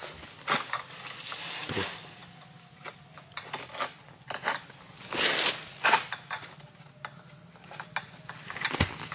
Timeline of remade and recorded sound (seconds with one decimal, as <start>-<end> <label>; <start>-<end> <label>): 0.0-9.1 recorded